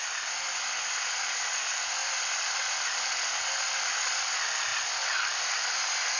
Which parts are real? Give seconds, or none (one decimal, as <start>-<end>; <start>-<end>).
0.0-6.2